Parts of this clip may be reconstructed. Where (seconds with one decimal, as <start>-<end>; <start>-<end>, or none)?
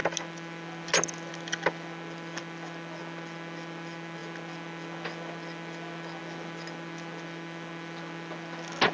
none